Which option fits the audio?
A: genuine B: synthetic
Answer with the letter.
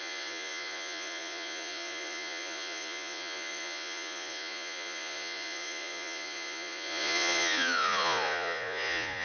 B